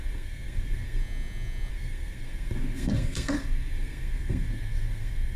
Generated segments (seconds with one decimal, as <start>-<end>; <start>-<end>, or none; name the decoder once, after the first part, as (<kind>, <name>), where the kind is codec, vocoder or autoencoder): 0.0-1.0 (codec, SNAC); 1.7-5.4